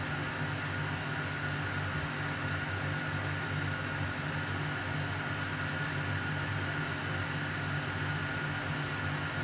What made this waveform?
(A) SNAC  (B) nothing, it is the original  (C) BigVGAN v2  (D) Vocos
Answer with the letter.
B